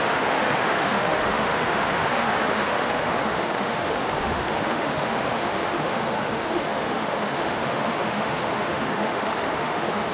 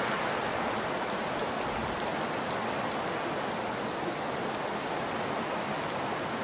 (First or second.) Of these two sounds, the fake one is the first